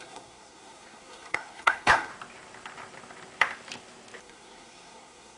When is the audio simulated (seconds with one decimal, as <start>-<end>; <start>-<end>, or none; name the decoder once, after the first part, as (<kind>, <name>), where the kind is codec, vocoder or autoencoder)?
0.0-2.1 (codec, SNAC); 4.2-5.4